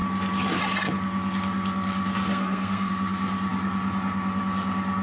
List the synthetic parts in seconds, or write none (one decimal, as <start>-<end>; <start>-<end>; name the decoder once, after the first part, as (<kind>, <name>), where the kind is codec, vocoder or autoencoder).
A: 2.3-2.9 (codec, SNAC)